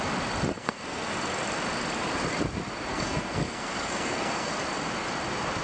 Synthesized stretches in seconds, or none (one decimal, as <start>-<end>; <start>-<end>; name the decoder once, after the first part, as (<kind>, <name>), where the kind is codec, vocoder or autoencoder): 0.5-1.1 (codec, SNAC); 2.9-4.5